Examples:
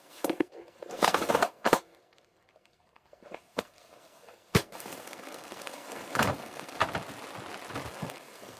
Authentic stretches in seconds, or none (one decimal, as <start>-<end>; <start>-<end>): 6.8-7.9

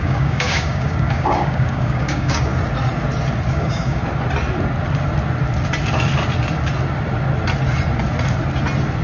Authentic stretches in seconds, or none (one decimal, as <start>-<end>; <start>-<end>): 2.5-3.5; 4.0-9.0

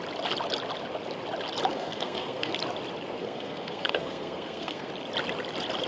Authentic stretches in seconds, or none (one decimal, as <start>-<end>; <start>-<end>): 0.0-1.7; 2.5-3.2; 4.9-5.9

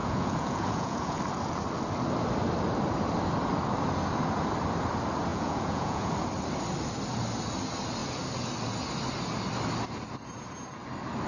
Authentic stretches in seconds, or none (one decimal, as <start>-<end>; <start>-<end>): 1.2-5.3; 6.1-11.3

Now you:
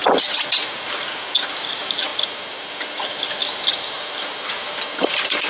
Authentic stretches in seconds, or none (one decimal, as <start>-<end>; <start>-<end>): 0.0-5.5

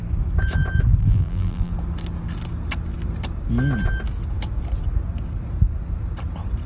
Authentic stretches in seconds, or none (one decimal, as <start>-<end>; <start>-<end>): 0.0-1.0; 1.7-6.7